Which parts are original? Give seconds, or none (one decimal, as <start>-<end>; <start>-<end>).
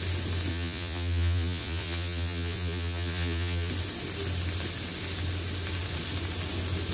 0.0-0.5; 3.7-6.9